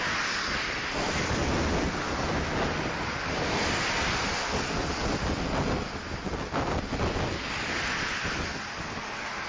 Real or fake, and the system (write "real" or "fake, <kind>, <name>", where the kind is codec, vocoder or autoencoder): real